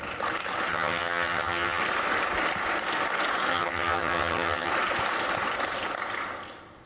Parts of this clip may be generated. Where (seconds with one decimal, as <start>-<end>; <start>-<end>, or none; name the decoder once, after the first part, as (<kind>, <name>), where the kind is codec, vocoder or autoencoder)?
0.7-1.8 (vocoder, HiFi-GAN); 3.5-4.7